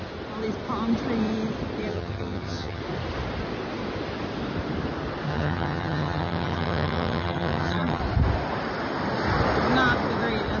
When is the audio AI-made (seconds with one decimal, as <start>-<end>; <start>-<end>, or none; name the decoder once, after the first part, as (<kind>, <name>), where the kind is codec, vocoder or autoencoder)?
1.9-2.8 (vocoder, HiFi-GAN); 5.3-8.0